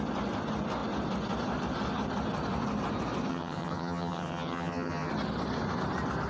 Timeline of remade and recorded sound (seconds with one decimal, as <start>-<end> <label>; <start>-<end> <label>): 0.0-3.3 recorded; 3.3-5.1 remade; 5.1-6.3 recorded